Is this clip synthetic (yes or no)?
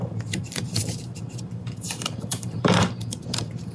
yes